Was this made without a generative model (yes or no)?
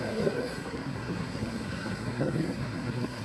no